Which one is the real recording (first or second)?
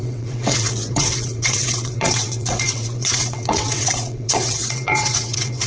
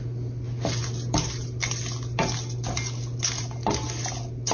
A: second